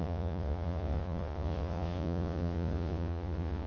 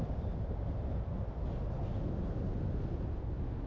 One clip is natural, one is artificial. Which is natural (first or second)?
second